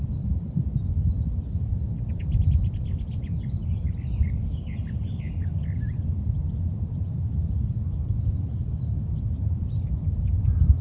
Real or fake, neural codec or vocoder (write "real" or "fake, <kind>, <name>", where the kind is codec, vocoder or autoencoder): real